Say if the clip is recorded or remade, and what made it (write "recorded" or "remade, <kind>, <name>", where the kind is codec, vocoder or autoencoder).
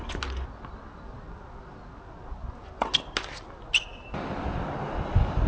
recorded